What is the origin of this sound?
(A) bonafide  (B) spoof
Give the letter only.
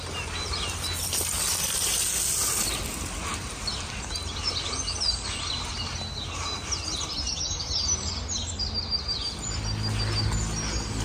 A